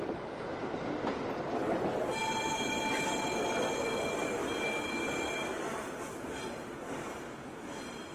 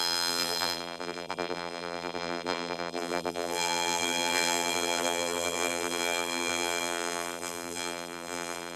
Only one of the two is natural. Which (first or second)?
first